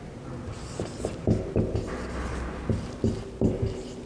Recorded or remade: recorded